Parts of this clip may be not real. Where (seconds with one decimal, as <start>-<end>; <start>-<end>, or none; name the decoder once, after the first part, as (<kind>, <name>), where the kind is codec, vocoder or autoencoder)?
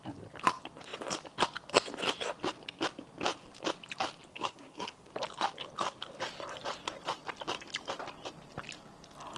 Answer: 4.3-5.1 (codec, SNAC)